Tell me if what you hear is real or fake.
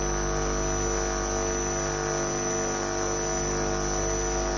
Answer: real